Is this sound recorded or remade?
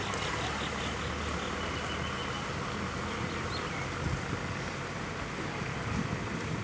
recorded